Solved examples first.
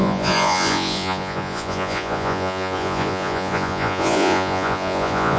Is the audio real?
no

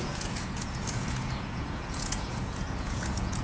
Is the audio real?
no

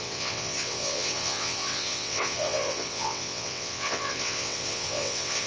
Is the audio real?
no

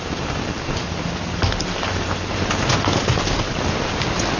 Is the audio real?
yes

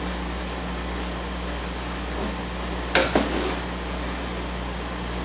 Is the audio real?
yes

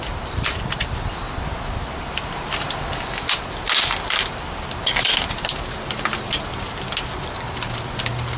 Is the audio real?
yes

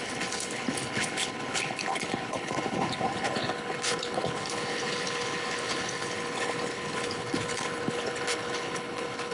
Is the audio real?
no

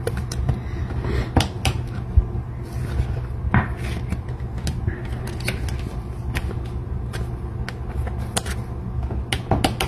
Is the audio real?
yes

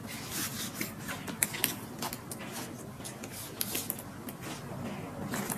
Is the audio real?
yes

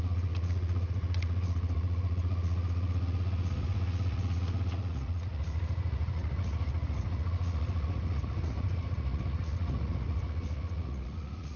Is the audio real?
no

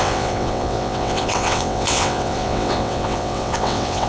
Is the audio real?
no